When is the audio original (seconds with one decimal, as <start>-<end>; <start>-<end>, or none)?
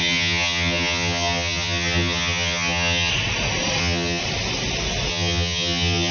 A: 3.1-3.8; 4.2-5.1